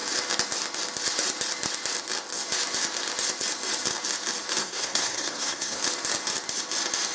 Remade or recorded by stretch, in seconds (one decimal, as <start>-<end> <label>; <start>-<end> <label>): 0.0-4.6 recorded; 4.6-5.8 remade; 5.8-7.1 recorded